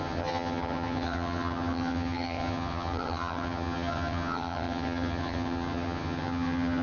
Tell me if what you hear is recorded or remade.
remade